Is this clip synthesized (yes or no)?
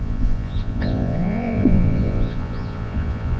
yes